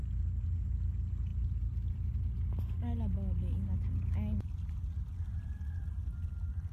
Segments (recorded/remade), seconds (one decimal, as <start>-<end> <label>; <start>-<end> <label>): 0.0-6.7 recorded